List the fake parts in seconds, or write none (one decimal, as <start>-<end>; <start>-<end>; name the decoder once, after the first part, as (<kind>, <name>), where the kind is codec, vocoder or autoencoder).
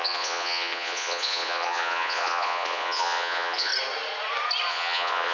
0.0-3.7 (vocoder, Vocos); 4.7-5.3